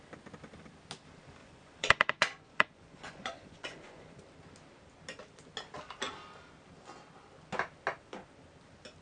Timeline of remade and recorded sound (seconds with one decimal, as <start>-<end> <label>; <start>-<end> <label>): 0.0-1.4 recorded; 1.4-4.2 remade; 4.2-9.0 recorded